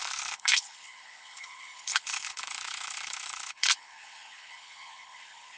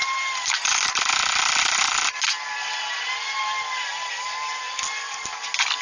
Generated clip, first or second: first